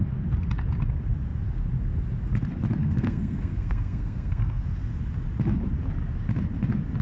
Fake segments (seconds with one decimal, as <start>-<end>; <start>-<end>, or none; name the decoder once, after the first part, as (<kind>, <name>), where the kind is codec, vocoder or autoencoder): 2.8-4.6 (codec, SNAC)